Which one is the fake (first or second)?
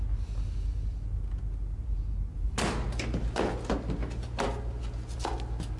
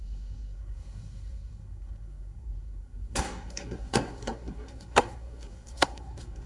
second